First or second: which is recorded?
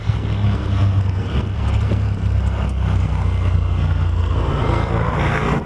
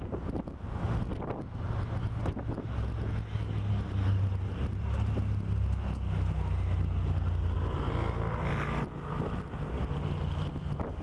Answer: second